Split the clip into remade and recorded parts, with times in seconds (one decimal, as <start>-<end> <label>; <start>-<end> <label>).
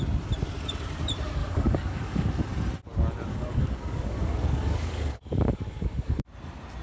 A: 0.0-1.4 recorded; 1.4-2.3 remade; 2.3-3.3 recorded; 3.3-6.2 remade; 6.2-6.8 recorded